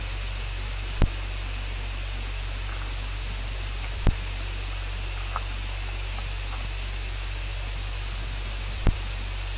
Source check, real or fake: real